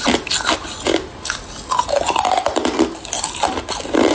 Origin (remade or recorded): recorded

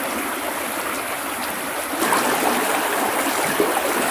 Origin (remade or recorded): recorded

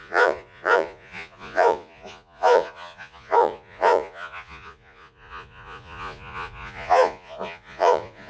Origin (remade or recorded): remade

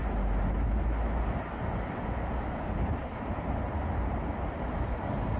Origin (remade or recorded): recorded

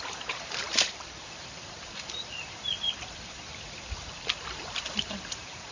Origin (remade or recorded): remade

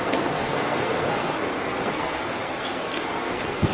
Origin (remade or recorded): remade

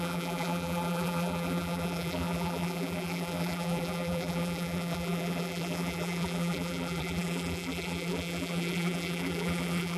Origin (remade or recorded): remade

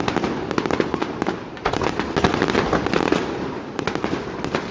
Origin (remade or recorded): recorded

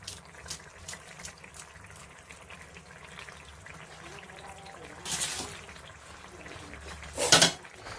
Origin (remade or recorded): recorded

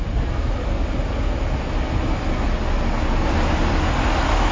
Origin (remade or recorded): recorded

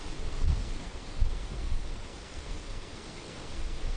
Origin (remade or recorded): remade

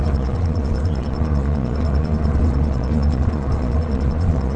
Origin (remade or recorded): remade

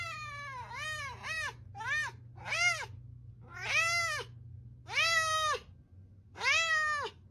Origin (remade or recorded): recorded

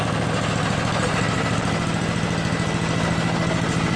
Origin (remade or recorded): recorded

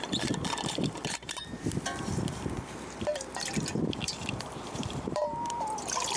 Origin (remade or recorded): remade